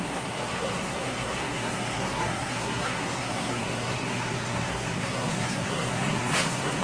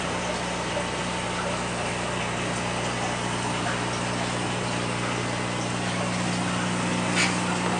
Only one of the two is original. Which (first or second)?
second